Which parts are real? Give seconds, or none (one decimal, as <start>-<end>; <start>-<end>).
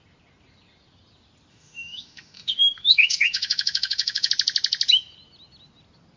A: 0.0-1.5; 4.3-6.2